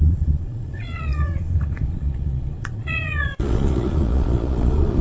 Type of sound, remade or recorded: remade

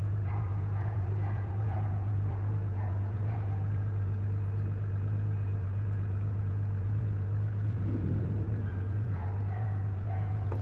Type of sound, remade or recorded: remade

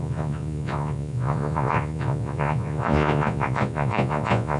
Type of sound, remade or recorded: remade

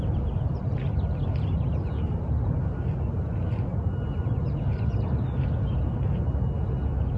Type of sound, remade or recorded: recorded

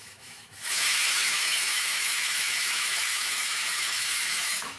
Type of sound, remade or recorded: remade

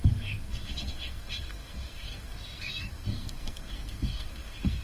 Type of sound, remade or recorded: remade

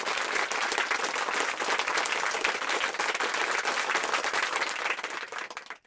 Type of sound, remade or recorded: recorded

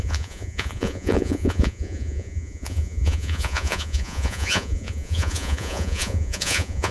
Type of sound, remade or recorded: remade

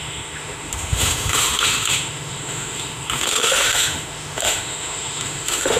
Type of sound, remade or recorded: remade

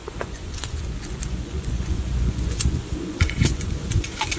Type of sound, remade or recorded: remade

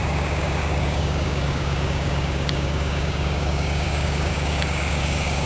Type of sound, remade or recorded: remade